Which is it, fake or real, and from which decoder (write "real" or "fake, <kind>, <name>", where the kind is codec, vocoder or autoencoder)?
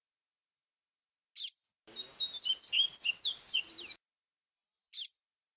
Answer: real